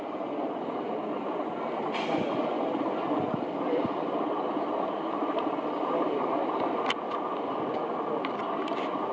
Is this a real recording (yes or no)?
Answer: yes